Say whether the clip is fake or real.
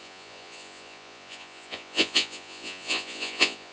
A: fake